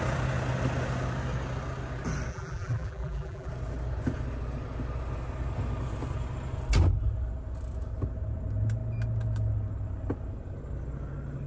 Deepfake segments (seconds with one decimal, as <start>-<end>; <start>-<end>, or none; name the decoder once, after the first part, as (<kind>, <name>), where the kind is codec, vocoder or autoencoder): 2.3-3.5 (vocoder, BigVGAN v2)